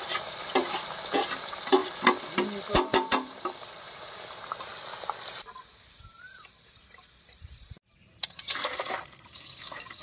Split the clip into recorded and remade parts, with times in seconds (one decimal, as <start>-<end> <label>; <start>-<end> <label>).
0.0-1.8 remade; 1.8-2.7 recorded; 2.7-4.7 remade; 4.7-6.1 recorded; 6.1-10.0 remade